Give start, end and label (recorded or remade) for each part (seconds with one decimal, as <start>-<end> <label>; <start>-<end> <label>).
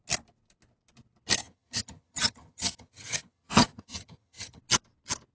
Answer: 0.0-1.4 recorded; 1.4-4.6 remade; 4.6-5.3 recorded